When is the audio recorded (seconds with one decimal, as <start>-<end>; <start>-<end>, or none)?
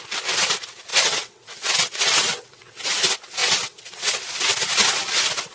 0.0-0.9; 2.9-3.4; 4.0-5.5